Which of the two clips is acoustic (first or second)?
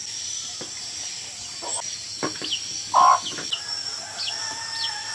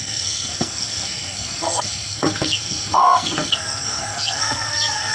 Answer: first